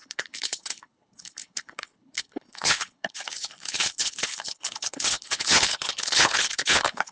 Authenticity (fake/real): fake